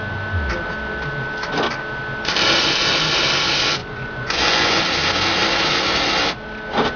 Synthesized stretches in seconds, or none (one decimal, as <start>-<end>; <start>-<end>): 3.8-4.8